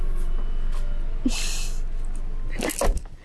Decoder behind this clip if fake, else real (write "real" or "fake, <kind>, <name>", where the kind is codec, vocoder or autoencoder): real